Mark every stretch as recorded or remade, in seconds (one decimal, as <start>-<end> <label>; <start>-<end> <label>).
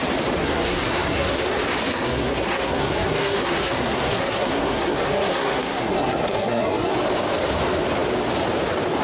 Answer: 0.0-0.4 recorded; 0.4-1.4 remade; 1.4-1.9 recorded; 1.9-6.9 remade; 6.9-9.0 recorded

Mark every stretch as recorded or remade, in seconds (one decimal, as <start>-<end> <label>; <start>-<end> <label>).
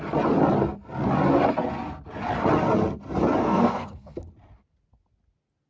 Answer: 0.0-3.4 recorded; 3.4-4.2 remade; 4.2-5.7 recorded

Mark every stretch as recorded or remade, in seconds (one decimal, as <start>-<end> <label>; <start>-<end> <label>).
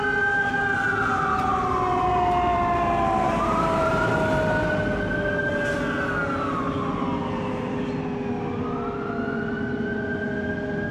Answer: 0.0-1.5 recorded; 1.5-4.1 remade; 4.1-10.9 recorded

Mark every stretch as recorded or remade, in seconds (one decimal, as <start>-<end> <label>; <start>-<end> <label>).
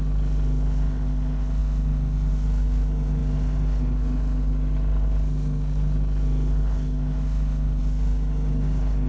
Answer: 0.0-9.1 remade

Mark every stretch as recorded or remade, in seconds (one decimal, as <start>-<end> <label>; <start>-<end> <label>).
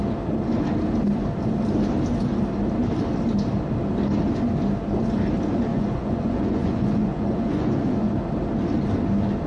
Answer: 0.0-5.7 recorded; 5.7-8.1 remade; 8.1-9.5 recorded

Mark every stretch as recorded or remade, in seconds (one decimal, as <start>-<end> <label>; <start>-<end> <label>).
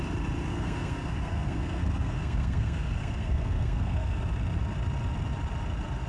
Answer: 0.0-0.5 recorded; 0.5-4.2 remade; 4.2-6.1 recorded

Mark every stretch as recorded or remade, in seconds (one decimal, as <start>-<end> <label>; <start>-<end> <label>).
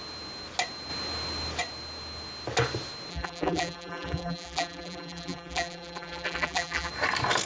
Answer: 0.0-3.1 recorded; 3.1-6.9 remade; 6.9-7.5 recorded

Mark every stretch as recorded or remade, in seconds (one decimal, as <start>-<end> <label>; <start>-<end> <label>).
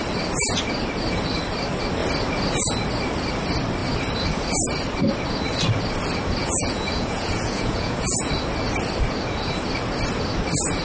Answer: 0.0-6.4 recorded; 6.4-8.3 remade; 8.3-10.8 recorded